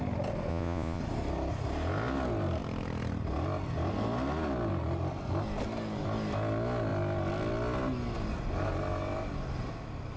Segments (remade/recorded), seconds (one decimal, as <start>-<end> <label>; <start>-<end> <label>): 0.0-0.5 recorded; 0.5-1.0 remade; 1.0-10.2 recorded